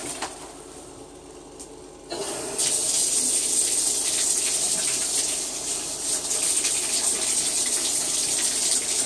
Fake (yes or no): no